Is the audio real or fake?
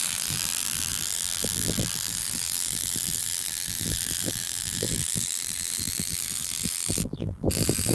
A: fake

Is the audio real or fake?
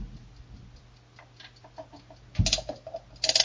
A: real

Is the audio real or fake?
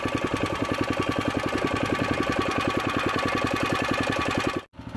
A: real